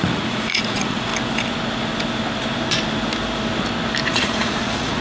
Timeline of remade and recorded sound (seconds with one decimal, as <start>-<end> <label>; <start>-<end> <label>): 0.0-1.1 remade; 1.1-4.1 recorded; 4.1-5.0 remade